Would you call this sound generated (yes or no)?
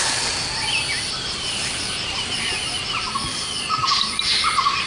no